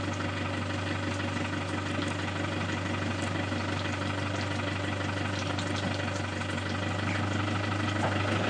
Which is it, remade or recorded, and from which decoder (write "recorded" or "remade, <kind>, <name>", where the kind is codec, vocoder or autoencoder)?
recorded